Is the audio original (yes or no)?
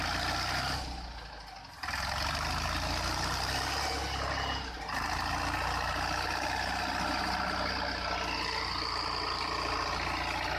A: yes